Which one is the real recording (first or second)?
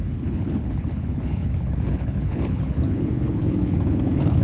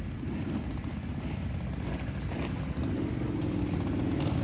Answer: second